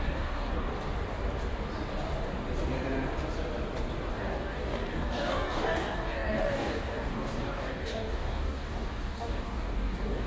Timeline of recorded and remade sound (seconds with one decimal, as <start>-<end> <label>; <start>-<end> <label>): 0.0-0.7 remade; 0.7-4.1 recorded; 4.1-10.3 remade